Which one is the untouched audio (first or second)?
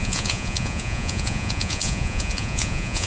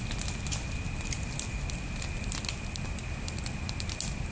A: second